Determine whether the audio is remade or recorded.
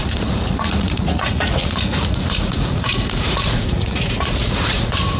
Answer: remade